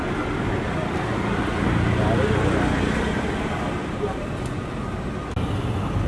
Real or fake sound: real